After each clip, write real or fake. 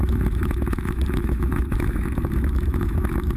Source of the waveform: fake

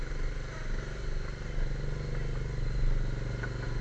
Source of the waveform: real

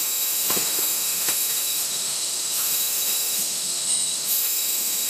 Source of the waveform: fake